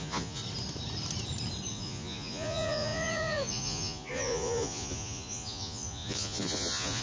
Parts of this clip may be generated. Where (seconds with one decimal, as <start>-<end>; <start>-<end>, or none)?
0.0-0.4; 1.7-7.0